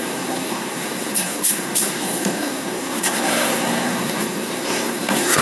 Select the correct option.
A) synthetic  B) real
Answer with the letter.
A